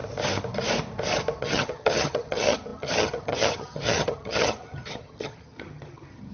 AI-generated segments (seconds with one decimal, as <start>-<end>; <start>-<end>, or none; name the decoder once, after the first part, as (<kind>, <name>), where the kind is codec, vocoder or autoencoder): 1.4-6.3 (vocoder, HiFi-GAN)